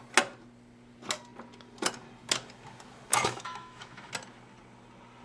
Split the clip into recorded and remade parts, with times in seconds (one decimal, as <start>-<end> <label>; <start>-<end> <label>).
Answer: 0.0-3.1 recorded; 3.1-4.1 remade; 4.1-5.2 recorded